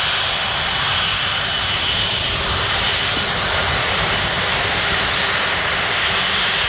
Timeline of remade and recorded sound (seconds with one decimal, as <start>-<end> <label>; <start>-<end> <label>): 0.0-6.7 remade